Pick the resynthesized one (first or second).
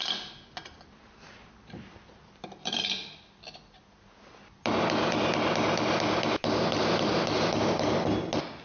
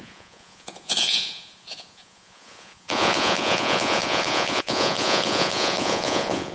second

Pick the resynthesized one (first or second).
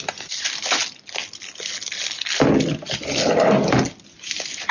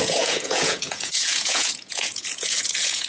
second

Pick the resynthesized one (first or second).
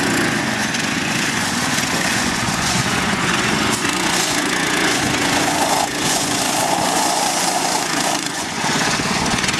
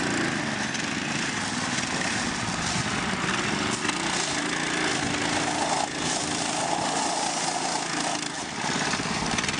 first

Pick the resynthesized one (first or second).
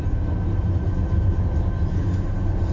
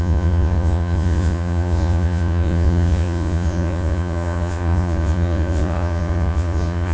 second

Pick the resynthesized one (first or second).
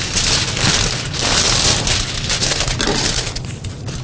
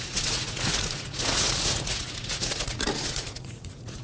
second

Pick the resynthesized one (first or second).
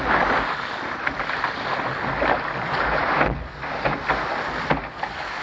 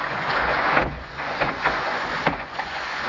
second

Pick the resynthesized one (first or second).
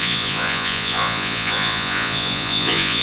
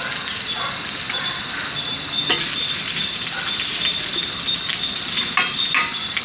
first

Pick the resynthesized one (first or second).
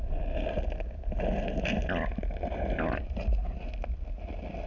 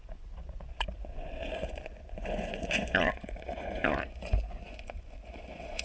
second